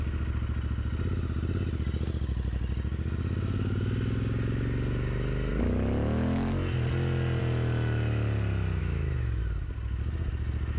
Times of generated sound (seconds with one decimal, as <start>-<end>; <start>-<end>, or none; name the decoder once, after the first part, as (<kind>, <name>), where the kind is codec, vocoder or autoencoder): 8.8-9.4 (autoencoder, DAC-VAE)